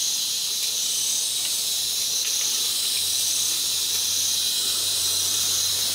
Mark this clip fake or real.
fake